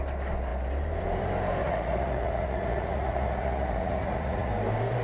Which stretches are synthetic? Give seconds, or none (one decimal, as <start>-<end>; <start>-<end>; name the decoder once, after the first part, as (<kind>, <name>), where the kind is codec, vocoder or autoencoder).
1.6-4.5 (vocoder, Vocos)